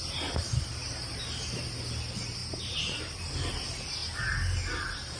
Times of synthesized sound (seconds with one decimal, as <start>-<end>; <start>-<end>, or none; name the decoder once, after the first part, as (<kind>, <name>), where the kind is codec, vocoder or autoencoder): 0.8-1.7 (vocoder, BigVGAN v2); 2.4-3.0